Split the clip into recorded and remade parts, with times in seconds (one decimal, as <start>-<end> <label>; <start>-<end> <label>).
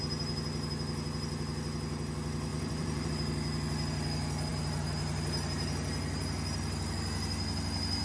0.0-2.5 recorded; 2.5-3.1 remade; 3.1-8.0 recorded